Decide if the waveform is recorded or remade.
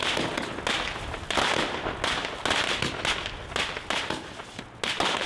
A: recorded